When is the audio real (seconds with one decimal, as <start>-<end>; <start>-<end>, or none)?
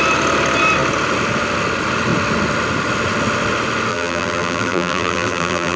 0.0-3.9